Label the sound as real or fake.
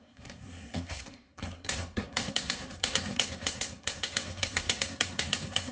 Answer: fake